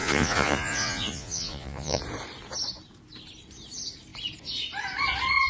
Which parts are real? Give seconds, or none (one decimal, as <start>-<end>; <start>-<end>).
2.0-5.5